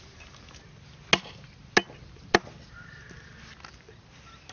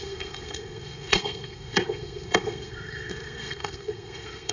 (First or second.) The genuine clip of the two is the first